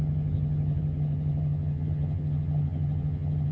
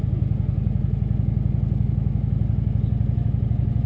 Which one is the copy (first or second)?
first